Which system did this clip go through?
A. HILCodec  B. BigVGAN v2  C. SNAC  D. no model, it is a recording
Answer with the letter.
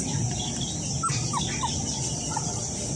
D